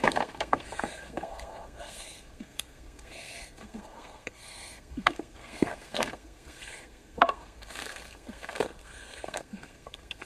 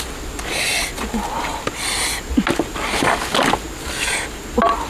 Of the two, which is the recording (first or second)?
second